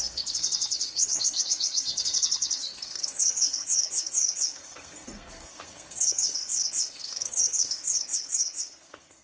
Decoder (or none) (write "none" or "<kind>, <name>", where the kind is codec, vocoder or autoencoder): codec, SNAC